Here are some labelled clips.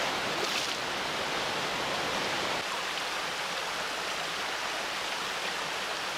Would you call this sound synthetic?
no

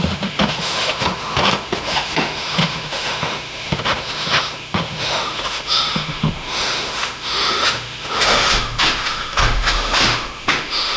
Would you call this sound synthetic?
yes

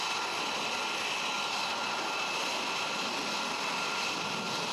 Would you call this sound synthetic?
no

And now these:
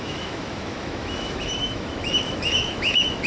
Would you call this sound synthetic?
yes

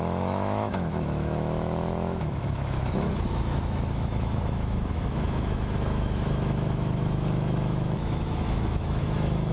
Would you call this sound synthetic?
yes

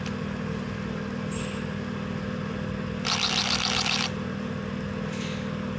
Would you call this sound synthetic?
no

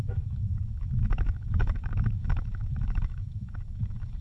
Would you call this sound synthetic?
yes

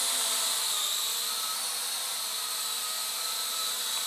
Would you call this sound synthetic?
no